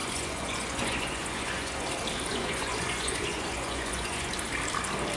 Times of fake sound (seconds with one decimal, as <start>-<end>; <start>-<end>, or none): 0.0-1.9; 2.3-4.3